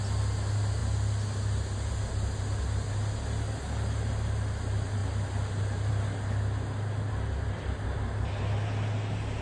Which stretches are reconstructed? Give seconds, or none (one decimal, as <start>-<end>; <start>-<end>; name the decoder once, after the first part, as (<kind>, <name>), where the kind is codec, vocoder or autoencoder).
none